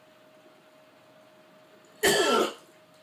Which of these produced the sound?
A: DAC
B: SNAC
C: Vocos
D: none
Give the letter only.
D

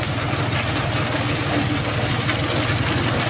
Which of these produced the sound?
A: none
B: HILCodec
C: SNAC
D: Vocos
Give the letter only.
A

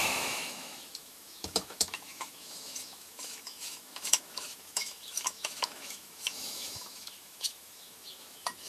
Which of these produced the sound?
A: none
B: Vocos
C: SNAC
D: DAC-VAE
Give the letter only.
D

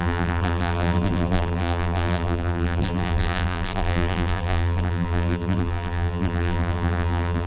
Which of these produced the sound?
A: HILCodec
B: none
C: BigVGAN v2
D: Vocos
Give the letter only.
C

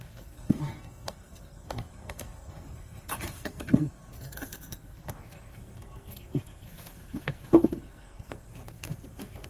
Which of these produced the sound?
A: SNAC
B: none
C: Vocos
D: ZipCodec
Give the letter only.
A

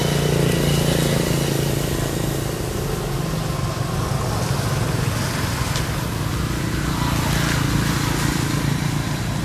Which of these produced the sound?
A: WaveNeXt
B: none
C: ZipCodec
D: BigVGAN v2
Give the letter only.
B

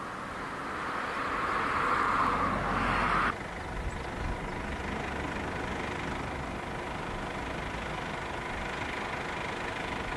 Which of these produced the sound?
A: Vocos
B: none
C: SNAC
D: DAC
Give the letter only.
B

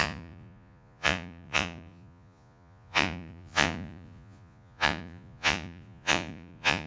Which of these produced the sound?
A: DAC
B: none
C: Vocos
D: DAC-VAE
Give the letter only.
C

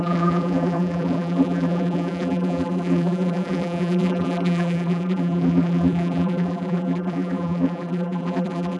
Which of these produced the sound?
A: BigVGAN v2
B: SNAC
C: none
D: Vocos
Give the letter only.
A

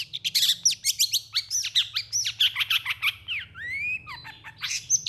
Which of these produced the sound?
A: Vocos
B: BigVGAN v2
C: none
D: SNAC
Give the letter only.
C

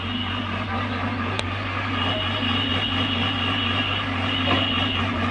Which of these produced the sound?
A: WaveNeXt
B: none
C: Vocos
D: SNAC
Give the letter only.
B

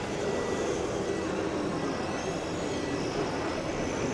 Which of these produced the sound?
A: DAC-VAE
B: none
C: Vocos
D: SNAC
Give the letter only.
B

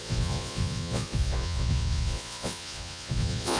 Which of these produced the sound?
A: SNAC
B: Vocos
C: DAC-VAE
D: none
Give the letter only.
B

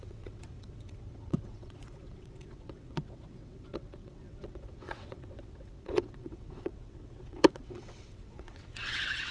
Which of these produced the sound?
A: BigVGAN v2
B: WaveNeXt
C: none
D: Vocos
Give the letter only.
B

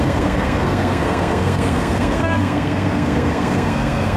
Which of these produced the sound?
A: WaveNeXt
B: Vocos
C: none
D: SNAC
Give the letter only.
D